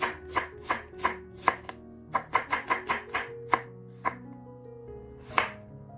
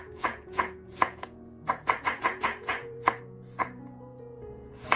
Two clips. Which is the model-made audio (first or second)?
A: second